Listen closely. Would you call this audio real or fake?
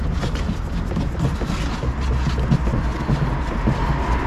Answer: real